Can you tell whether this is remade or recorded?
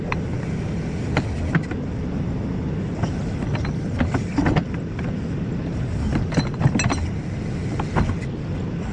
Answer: recorded